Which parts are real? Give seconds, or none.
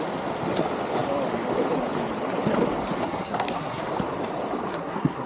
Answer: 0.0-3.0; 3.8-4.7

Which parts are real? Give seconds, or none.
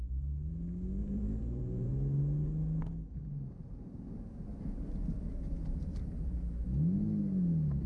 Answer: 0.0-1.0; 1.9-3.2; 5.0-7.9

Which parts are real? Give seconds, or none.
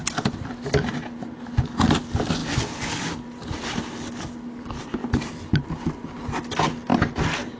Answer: 0.0-7.6